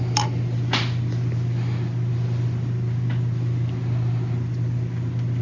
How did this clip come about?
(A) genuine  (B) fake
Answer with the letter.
A